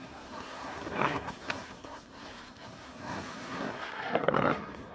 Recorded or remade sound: remade